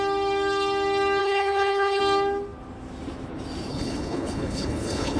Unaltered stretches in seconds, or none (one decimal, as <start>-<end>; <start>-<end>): 0.0-1.2; 2.0-3.7